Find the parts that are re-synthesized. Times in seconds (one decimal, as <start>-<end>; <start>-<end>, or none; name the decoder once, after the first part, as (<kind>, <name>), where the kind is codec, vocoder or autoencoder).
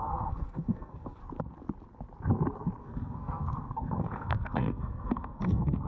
0.0-1.2 (codec, SNAC); 2.8-5.9